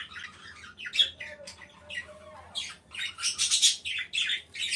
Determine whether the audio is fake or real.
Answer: real